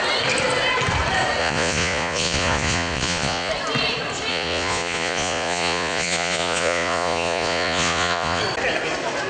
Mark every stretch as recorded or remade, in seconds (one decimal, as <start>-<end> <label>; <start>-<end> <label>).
0.0-1.4 recorded; 1.4-3.5 remade; 3.5-4.3 recorded; 4.3-8.4 remade; 8.4-9.3 recorded